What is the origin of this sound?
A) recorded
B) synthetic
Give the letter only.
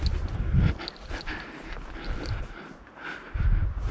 A